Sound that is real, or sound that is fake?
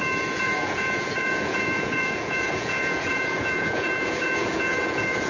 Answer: fake